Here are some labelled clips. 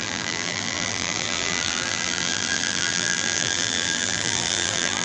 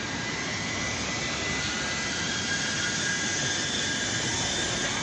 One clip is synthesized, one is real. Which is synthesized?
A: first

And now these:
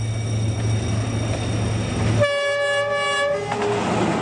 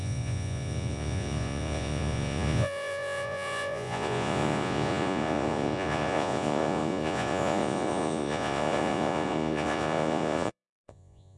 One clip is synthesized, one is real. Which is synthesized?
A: second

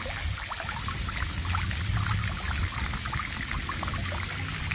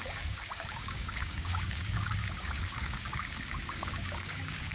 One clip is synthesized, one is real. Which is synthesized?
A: second